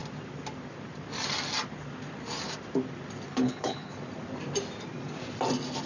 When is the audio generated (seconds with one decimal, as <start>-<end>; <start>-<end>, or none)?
3.3-3.9